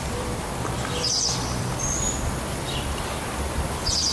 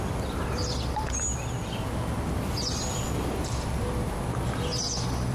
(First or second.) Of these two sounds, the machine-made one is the first